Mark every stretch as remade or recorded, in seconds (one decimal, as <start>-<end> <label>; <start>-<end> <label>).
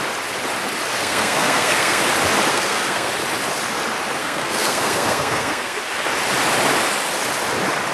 0.0-1.0 recorded; 1.0-2.0 remade; 2.0-2.5 recorded; 2.5-3.1 remade; 3.1-4.2 recorded; 4.2-5.8 remade; 5.8-7.9 recorded